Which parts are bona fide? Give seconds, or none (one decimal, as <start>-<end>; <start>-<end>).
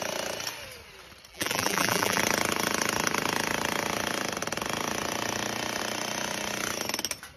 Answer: 0.0-1.3; 2.2-7.4